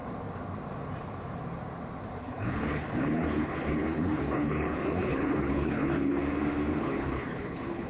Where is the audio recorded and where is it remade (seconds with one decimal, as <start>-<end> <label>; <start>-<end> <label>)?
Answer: 0.0-2.2 recorded; 2.2-6.2 remade; 6.2-6.8 recorded; 6.8-7.9 remade